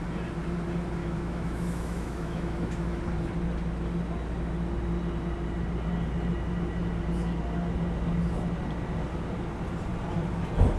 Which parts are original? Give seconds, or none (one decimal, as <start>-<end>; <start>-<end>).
0.0-1.0; 3.0-10.8